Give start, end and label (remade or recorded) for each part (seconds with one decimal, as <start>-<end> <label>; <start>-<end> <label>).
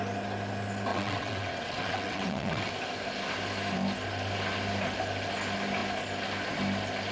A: 0.0-0.9 recorded; 0.9-2.7 remade; 2.7-7.1 recorded